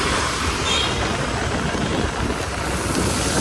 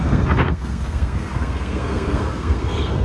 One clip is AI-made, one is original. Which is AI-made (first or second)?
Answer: second